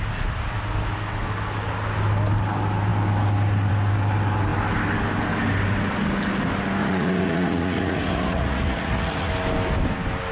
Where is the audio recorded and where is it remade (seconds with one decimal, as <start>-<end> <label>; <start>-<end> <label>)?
0.0-6.8 recorded; 6.8-9.3 remade; 9.3-10.3 recorded